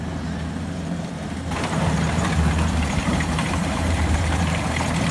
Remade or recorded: remade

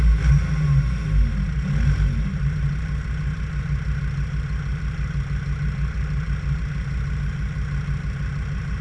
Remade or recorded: recorded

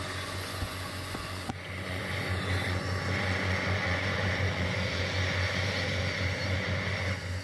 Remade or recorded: remade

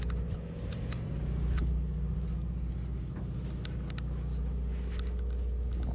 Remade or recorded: recorded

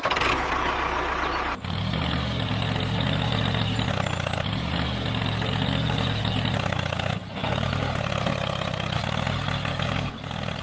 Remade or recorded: recorded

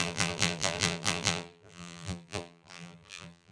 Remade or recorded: remade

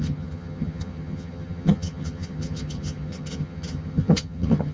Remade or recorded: remade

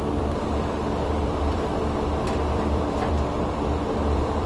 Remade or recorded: remade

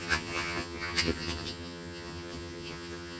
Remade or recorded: remade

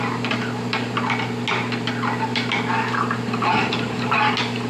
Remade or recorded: recorded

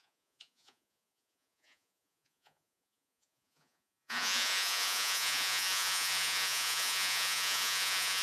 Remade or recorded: remade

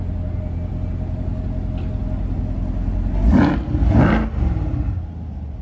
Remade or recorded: recorded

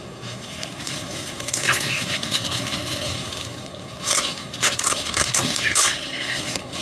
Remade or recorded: remade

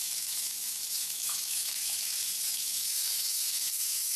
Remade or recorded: remade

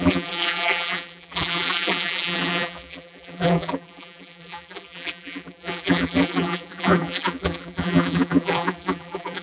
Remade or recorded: remade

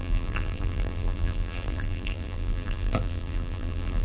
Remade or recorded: remade